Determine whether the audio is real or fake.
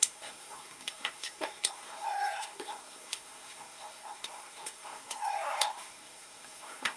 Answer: fake